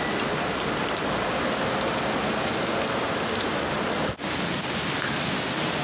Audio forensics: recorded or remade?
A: recorded